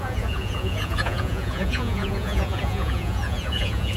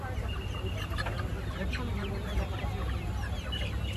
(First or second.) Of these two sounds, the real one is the second